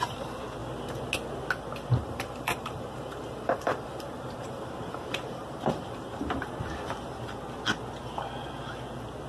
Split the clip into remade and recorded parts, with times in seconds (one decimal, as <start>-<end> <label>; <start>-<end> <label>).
0.0-2.0 recorded; 2.0-6.5 remade; 6.5-9.3 recorded